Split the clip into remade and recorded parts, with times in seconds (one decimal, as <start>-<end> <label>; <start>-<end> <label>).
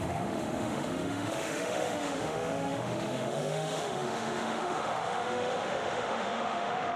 0.0-7.0 remade